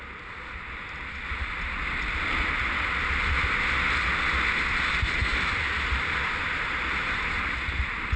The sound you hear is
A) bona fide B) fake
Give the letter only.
A